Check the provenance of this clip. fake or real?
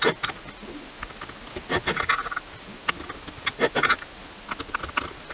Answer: real